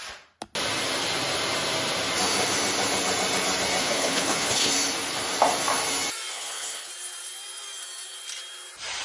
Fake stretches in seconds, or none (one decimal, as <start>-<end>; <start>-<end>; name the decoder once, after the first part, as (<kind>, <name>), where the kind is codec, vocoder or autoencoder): 3.8-4.7 (codec, HILCodec); 6.3-6.9